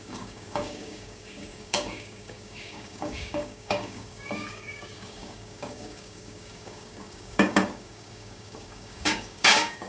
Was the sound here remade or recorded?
remade